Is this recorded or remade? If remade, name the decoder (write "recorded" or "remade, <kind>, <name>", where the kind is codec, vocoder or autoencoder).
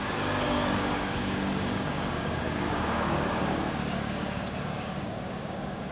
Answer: remade, codec, DAC